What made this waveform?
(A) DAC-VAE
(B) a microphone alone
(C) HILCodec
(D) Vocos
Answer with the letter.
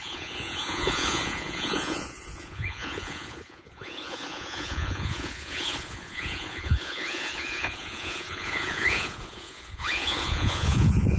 D